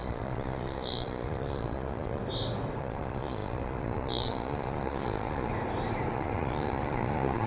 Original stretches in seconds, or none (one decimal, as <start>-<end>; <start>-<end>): 2.2-2.8; 5.5-6.1